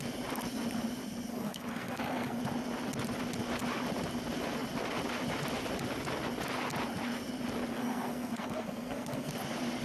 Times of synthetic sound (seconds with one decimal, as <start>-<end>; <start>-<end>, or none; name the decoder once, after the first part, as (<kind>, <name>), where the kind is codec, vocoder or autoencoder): 1.3-2.4 (codec, SNAC); 7.7-9.3